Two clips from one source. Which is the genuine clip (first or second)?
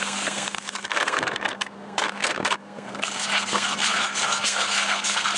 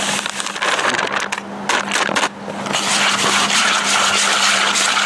second